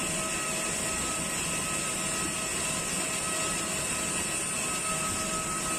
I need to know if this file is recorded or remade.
recorded